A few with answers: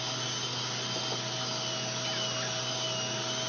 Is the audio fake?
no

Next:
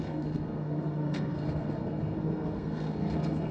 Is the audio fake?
yes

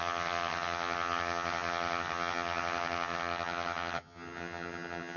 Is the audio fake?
yes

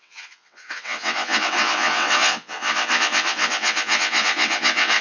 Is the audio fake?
yes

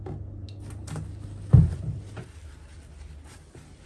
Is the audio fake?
no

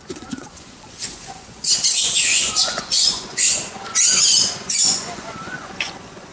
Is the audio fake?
yes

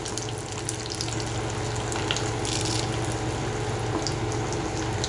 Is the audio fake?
no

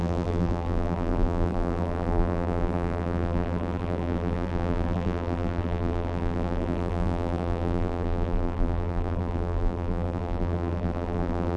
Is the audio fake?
yes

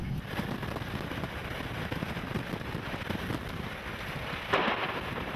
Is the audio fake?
no